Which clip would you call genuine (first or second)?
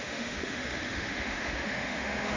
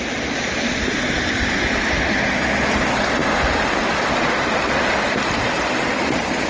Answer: second